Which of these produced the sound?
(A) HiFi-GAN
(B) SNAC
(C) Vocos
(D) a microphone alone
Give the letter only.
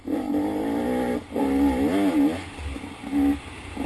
D